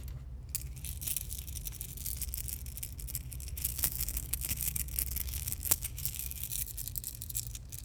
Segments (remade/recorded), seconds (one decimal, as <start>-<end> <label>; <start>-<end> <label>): 0.0-3.7 recorded; 3.7-4.8 remade; 4.8-5.2 recorded; 5.2-6.5 remade; 6.5-7.8 recorded